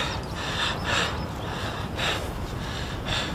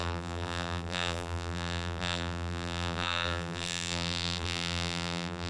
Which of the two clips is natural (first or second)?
first